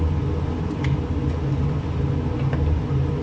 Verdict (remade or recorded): recorded